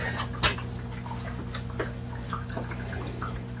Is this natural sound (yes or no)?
yes